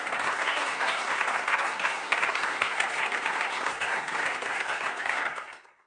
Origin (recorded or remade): remade